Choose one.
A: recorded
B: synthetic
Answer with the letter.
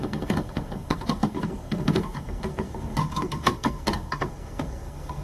B